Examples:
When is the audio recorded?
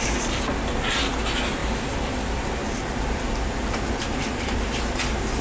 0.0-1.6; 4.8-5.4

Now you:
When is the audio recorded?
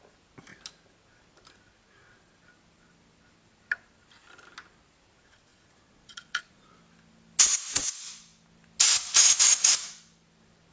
0.0-5.5; 6.7-10.7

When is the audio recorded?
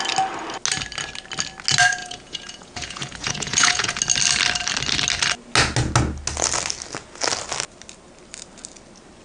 0.0-2.0; 4.0-9.2